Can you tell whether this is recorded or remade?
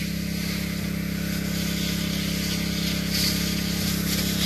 recorded